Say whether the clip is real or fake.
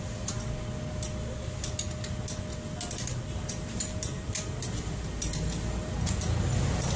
real